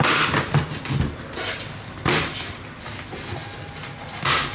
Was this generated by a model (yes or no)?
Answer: no